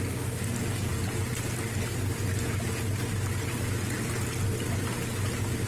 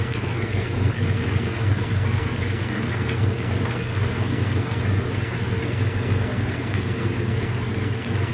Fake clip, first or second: second